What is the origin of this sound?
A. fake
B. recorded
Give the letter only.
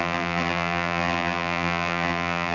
A